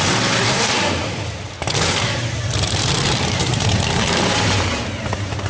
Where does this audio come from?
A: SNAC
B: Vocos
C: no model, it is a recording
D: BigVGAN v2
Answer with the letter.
D